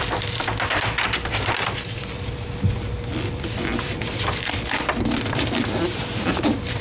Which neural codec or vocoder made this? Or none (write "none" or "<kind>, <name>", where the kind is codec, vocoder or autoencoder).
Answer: vocoder, BigVGAN v2